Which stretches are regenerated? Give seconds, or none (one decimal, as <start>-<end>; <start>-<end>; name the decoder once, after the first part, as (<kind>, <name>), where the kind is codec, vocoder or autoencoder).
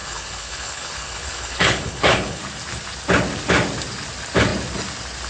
0.0-2.4 (codec, HILCodec)